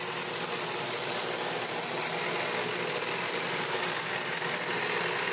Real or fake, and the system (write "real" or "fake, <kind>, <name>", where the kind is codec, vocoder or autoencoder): real